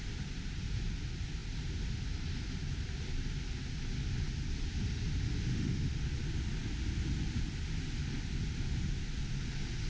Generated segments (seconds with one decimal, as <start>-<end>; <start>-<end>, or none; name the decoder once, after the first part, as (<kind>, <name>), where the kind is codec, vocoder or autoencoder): 5.5-6.1 (autoencoder, DAC-VAE)